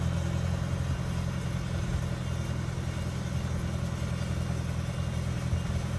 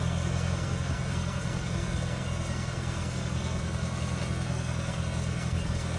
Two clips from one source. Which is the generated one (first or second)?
second